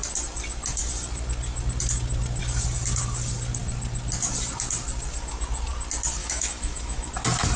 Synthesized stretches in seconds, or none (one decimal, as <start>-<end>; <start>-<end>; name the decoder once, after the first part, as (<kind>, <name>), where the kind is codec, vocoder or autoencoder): 6.2-7.1 (autoencoder, DAC-VAE)